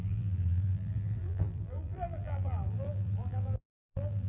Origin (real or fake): fake